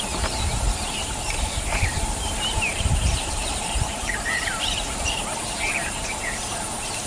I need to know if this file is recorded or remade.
remade